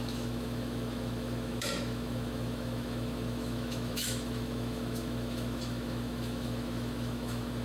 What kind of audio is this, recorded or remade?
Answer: remade